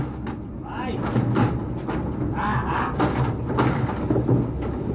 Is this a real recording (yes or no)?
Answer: yes